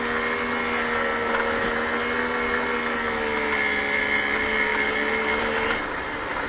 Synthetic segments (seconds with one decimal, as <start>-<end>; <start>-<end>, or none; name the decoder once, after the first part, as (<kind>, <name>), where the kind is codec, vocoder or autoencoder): none